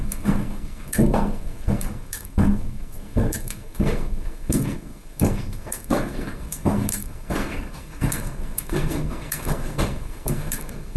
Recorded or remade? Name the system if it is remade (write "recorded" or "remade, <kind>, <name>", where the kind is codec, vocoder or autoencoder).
remade, codec, SNAC